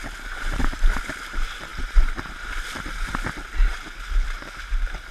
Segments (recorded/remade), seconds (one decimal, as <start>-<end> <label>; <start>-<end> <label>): 0.0-5.1 recorded

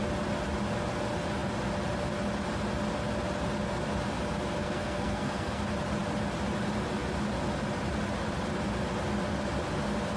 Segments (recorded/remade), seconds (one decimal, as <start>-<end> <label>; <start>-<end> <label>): 0.0-4.6 recorded; 4.6-5.6 remade; 5.6-10.2 recorded

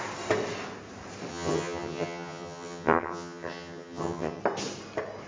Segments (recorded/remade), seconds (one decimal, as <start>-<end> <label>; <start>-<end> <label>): 0.0-1.3 recorded; 1.3-4.4 remade; 4.4-5.3 recorded

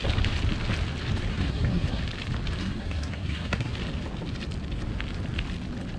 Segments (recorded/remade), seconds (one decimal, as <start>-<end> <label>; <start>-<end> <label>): 0.0-1.3 recorded; 1.3-2.0 remade; 2.0-2.6 recorded; 2.6-3.7 remade; 3.7-6.0 recorded

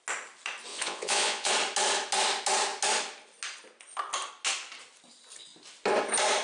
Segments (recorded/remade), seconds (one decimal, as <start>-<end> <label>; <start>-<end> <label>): 0.0-0.7 recorded; 0.7-1.5 remade; 1.5-6.4 recorded

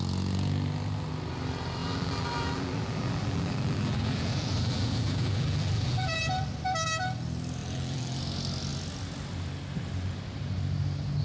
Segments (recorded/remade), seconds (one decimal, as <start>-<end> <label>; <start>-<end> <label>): 0.0-1.8 recorded; 1.8-6.1 remade; 6.1-7.6 recorded; 7.6-8.2 remade; 8.2-11.2 recorded

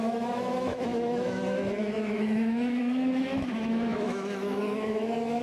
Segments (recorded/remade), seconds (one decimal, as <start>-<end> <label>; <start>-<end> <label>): 0.0-5.4 remade